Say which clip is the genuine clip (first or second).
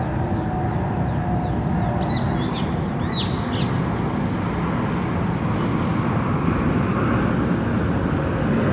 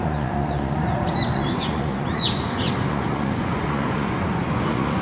first